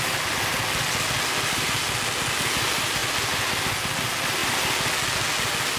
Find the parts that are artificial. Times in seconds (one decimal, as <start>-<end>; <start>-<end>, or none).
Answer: none